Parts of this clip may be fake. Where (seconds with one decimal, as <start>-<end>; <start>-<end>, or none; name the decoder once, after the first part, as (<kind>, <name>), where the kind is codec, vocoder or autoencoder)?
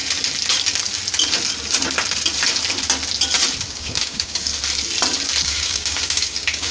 3.7-4.5 (codec, DAC); 5.4-6.7